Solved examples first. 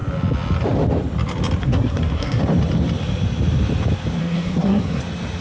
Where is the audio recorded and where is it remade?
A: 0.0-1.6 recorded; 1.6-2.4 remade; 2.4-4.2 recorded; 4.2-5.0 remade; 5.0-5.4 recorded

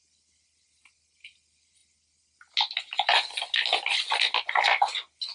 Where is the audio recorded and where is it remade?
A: 0.0-5.3 recorded

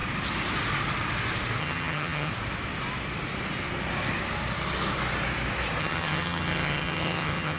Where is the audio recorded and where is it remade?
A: 0.0-1.6 recorded; 1.6-2.3 remade; 2.3-5.8 recorded; 5.8-7.6 remade

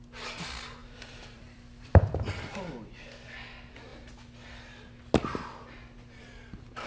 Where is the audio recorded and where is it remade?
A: 0.0-0.8 recorded; 0.8-2.7 remade; 2.7-6.9 recorded